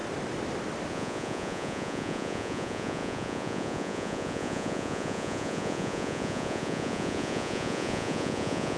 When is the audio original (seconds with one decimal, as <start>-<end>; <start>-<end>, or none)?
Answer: 0.0-0.9